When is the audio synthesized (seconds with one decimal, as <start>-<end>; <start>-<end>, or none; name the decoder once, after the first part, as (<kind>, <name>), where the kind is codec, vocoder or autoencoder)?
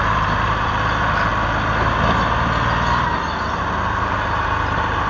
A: 0.0-0.7 (vocoder, BigVGAN v2)